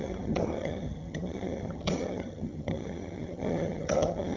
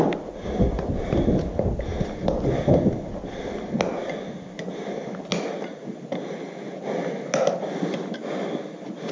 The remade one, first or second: first